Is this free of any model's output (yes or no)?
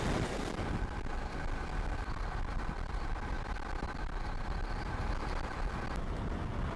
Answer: yes